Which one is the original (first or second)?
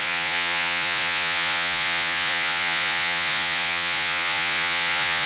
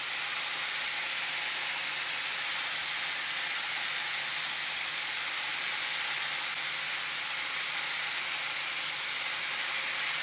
second